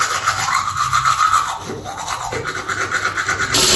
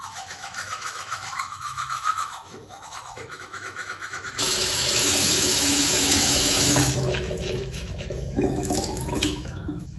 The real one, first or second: first